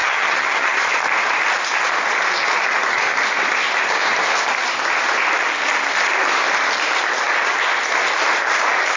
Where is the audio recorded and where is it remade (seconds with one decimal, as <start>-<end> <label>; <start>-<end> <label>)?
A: 0.0-0.8 remade; 0.8-9.0 recorded